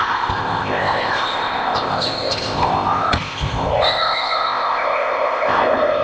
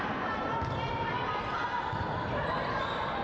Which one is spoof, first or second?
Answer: first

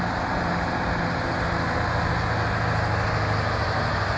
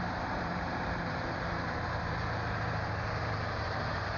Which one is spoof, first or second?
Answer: second